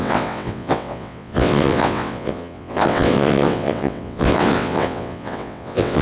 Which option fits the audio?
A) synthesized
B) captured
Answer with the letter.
A